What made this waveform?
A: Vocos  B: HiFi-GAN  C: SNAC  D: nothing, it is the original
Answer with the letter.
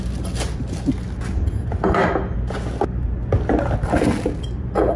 D